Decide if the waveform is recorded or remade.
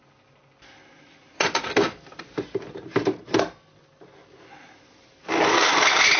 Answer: recorded